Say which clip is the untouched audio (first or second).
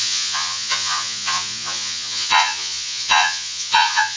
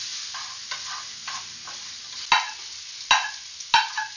second